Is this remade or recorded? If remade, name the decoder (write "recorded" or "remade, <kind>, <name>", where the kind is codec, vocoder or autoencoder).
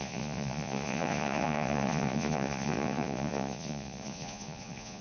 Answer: remade, vocoder, Vocos